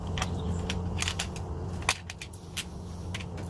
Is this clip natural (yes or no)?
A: yes